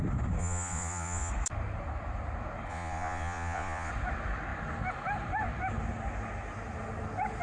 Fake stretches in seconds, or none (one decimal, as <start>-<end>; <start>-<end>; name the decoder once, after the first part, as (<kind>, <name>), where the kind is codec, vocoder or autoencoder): 0.4-1.3 (vocoder, Vocos); 2.7-3.9